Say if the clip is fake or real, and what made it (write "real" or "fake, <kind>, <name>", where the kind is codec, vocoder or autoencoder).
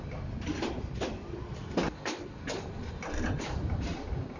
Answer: real